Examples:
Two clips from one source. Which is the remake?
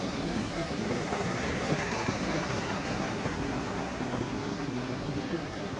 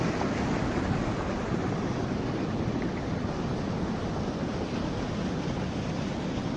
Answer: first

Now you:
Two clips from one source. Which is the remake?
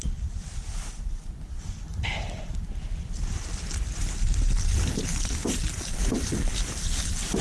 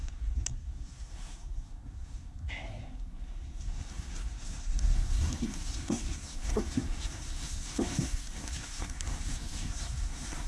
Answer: second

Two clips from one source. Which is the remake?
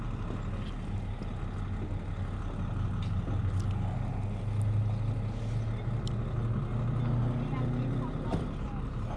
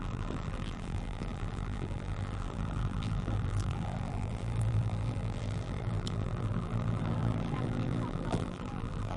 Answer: second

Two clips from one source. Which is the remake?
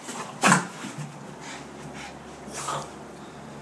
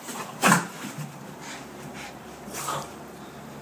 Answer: second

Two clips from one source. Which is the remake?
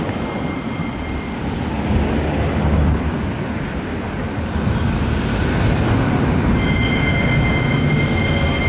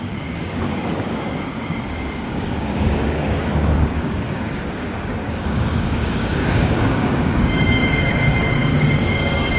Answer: second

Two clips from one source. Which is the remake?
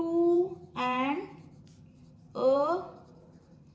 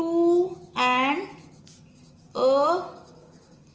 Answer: first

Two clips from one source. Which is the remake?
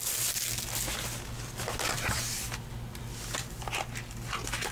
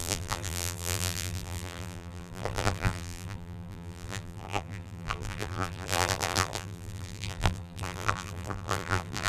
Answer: second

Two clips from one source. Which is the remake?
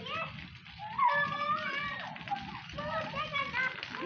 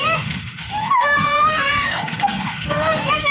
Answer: second